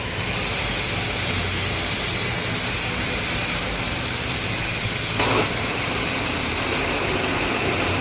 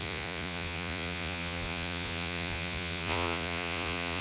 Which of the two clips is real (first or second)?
first